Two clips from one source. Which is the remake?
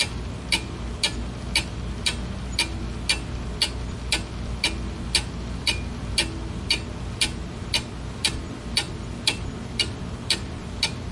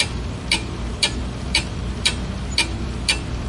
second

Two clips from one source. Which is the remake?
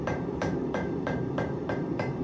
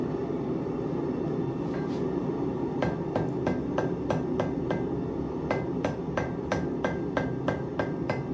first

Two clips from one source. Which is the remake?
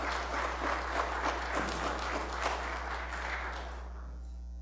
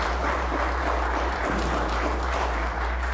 second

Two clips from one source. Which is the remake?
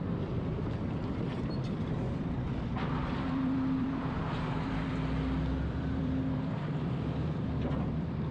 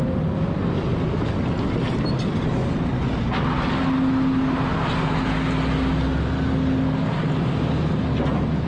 first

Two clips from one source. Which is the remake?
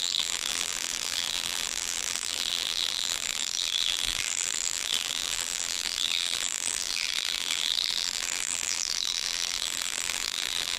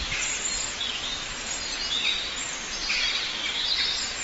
first